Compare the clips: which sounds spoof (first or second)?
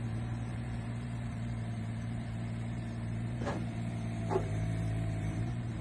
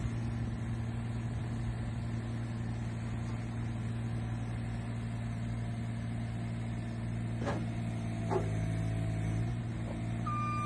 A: first